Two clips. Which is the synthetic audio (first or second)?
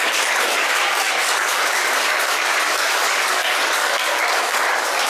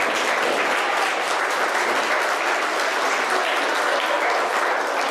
first